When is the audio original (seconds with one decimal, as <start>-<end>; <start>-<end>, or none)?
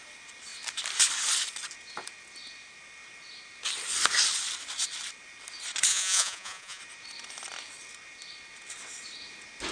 0.0-5.9; 6.8-9.7